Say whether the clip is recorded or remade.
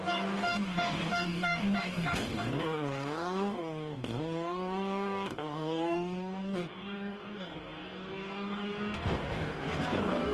remade